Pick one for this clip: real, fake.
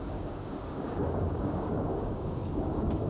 fake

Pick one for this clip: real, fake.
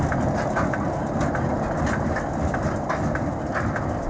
real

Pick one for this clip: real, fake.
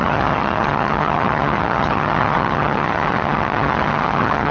fake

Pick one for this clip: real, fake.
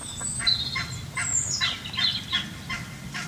real